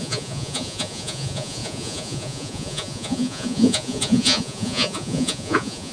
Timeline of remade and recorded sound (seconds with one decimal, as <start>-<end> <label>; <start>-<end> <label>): 0.0-5.9 remade